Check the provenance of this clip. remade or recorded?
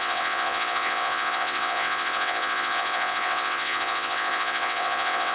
remade